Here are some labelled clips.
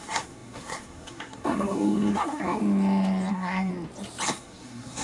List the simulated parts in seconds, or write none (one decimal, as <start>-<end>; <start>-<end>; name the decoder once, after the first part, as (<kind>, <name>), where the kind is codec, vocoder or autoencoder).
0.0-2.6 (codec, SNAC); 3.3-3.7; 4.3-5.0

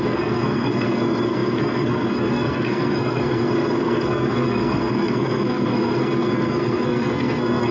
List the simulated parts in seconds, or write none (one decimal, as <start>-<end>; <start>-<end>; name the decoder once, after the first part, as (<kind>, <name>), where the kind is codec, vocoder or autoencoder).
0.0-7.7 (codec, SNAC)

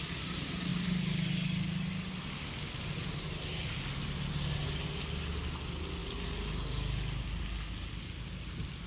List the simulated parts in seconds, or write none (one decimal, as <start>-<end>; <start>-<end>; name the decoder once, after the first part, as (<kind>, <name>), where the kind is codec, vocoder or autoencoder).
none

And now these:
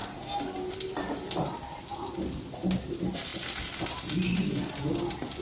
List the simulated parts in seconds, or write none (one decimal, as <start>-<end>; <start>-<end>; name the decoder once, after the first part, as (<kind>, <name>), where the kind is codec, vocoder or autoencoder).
none